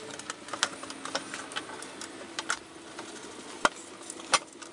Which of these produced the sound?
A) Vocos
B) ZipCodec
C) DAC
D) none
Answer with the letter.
D